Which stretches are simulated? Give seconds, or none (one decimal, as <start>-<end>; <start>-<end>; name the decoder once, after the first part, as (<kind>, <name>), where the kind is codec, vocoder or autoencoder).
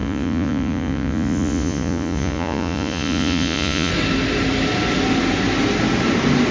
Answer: 0.0-3.9 (vocoder, Vocos)